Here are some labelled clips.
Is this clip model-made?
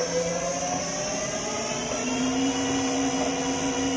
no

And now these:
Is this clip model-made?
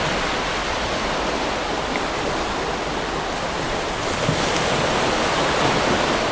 no